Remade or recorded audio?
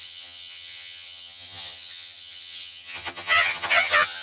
remade